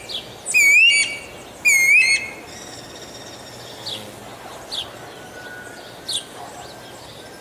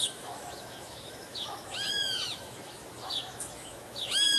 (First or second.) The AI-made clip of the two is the second